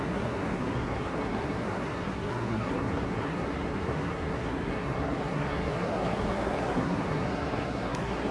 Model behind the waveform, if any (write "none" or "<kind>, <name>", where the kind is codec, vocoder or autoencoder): codec, SNAC